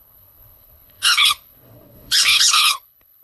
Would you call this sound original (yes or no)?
no